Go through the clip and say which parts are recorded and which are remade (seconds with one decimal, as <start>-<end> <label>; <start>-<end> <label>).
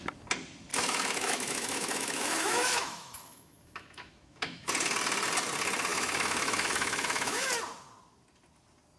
0.0-0.7 recorded; 0.7-4.7 remade; 4.7-5.9 recorded; 5.9-7.5 remade; 7.5-9.0 recorded